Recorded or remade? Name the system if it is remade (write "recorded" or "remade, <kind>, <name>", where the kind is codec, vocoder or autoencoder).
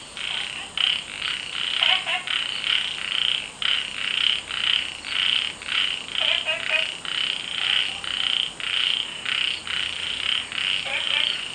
recorded